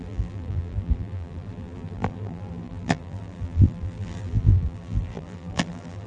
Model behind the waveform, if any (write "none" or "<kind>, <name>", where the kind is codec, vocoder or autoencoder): vocoder, BigVGAN v2